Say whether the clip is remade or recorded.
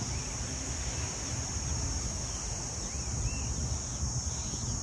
recorded